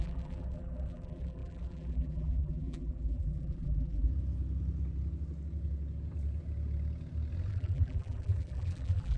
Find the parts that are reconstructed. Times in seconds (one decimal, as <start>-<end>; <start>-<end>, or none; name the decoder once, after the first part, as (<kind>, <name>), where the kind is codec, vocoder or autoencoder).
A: 0.0-4.1 (vocoder, BigVGAN v2); 7.5-9.2